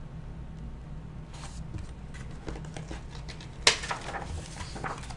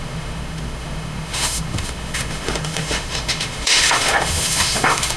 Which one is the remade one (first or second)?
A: second